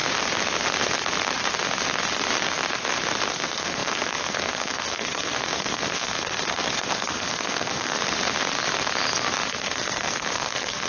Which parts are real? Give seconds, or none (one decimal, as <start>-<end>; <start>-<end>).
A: 0.0-3.3; 8.0-9.5